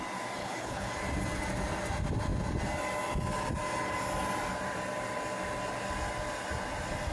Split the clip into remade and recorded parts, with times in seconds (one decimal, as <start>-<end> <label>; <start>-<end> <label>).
0.0-0.4 recorded; 0.4-0.9 remade; 0.9-7.1 recorded